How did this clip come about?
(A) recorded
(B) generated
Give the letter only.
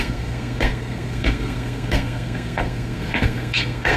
B